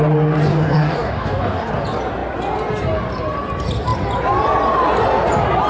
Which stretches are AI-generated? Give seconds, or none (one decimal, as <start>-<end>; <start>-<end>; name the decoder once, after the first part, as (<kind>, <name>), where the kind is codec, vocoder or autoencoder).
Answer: 0.5-1.7 (codec, DAC)